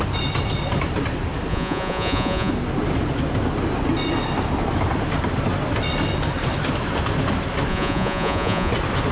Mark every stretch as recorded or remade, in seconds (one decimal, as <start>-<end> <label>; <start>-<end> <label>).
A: 0.0-1.5 recorded; 1.5-2.5 remade; 2.5-7.7 recorded; 7.7-8.7 remade; 8.7-9.1 recorded